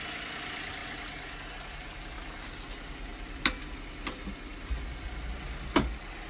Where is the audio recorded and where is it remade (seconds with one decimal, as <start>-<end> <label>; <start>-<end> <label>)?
0.0-6.3 recorded

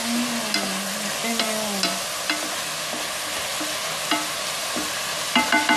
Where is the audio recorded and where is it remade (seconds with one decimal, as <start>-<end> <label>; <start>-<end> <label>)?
0.0-5.8 recorded

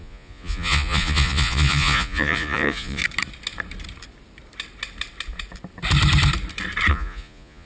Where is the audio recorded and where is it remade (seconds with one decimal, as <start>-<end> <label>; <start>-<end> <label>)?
0.0-3.0 remade; 3.0-6.9 recorded; 6.9-7.7 remade

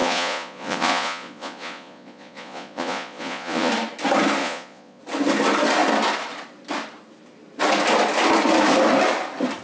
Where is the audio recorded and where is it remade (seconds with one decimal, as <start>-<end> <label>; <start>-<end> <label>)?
0.0-3.7 remade; 3.7-4.4 recorded; 4.4-5.0 remade; 5.0-9.6 recorded

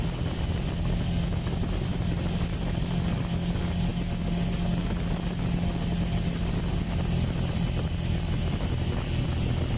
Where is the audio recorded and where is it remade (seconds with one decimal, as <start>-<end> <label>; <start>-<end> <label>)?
0.0-9.8 recorded

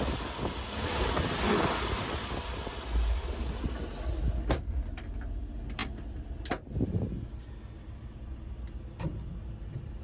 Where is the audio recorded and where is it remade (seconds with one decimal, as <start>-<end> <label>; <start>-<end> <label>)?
0.0-10.0 recorded

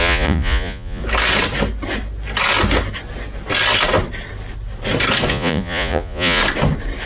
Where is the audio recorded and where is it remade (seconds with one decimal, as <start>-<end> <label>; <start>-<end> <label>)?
0.0-1.0 remade; 1.0-5.3 recorded; 5.3-6.4 remade; 6.4-7.1 recorded

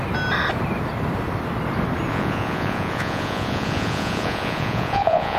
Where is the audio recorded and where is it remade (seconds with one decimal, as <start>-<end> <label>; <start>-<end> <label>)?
0.0-2.1 recorded; 2.1-5.4 remade